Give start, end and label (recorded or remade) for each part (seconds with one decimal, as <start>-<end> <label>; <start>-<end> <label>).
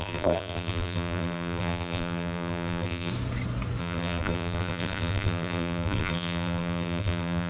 0.0-3.1 remade; 3.1-3.8 recorded; 3.8-7.5 remade